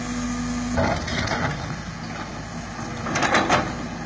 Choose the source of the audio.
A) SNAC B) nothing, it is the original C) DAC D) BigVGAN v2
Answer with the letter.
B